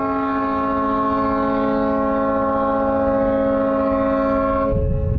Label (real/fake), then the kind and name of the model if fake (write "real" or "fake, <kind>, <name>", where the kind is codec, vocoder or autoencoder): real